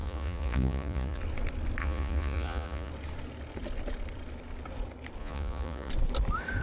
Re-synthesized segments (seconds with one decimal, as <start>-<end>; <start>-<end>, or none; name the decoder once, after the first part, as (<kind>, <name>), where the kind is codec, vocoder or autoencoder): 0.0-1.2 (vocoder, Vocos); 1.8-2.9; 5.2-5.9